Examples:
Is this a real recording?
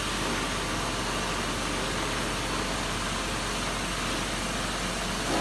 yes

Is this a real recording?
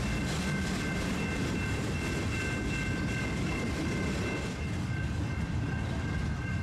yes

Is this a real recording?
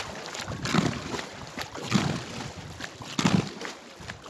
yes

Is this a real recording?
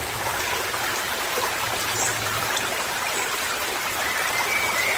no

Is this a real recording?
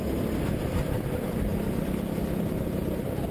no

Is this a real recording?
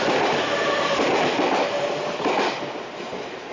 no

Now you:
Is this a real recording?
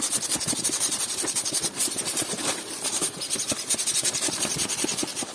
no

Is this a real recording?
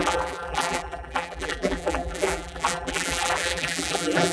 no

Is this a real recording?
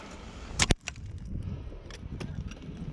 yes